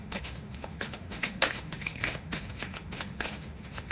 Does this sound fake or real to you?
fake